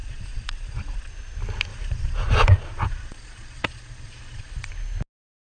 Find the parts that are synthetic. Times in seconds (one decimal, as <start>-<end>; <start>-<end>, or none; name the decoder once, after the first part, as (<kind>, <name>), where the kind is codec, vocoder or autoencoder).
0.0-1.1 (vocoder, Vocos); 1.7-4.7